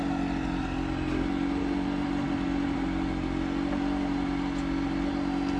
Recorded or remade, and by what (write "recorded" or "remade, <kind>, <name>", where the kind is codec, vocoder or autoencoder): recorded